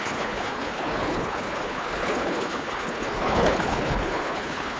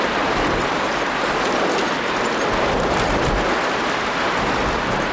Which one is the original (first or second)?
second